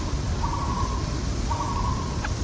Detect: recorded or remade recorded